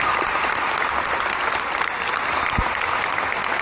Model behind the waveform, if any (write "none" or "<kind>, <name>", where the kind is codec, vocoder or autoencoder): none